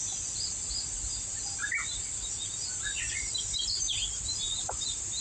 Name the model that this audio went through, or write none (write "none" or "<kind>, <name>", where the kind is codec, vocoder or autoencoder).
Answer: none